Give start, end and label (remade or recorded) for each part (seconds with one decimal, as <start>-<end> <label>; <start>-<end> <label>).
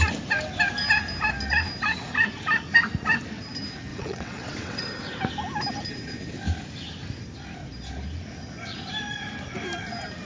0.0-3.9 recorded; 3.9-4.8 remade; 4.8-10.2 recorded